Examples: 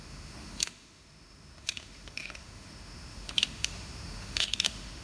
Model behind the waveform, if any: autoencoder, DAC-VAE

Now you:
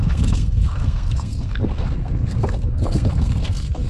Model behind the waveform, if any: codec, SNAC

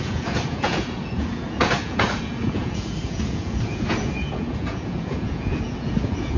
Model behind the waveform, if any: vocoder, Vocos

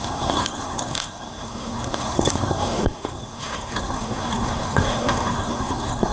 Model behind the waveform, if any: codec, SNAC